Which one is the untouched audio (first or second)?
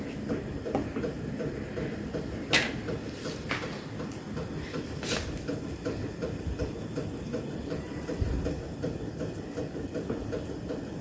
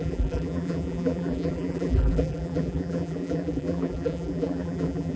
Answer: first